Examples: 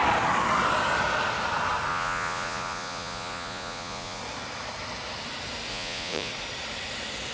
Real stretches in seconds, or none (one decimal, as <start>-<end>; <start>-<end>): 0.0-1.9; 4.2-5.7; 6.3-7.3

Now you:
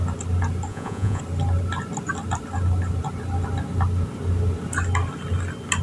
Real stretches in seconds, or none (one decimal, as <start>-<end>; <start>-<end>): 0.0-0.7; 1.2-5.8

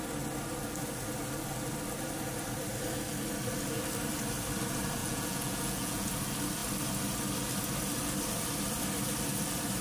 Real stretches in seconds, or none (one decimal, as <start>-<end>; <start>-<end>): 0.0-5.0; 6.1-9.8

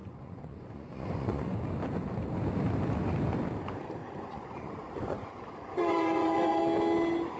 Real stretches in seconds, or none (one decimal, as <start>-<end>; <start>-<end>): 1.6-4.0; 6.6-7.4

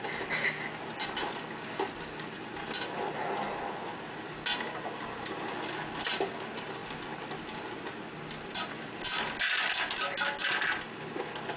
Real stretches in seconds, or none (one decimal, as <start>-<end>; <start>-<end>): 0.0-11.6